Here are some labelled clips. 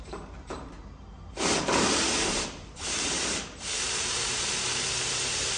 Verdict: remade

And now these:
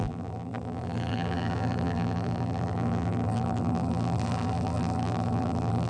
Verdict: remade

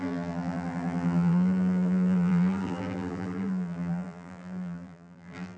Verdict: remade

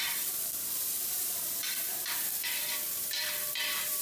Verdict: remade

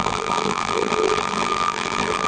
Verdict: remade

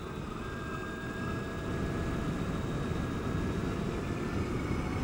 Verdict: remade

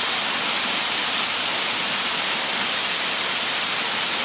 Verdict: recorded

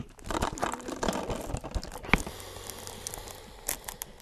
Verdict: recorded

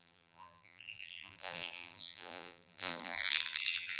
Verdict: remade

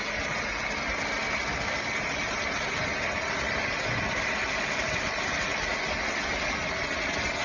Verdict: recorded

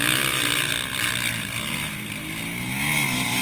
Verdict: recorded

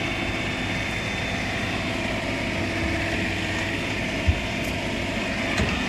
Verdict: recorded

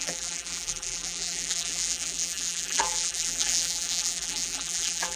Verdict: remade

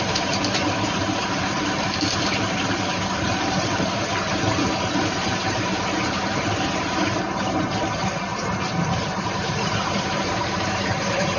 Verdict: remade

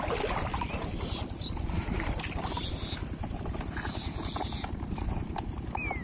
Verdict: recorded